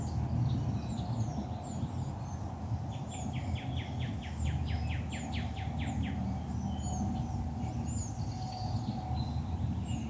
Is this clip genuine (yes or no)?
yes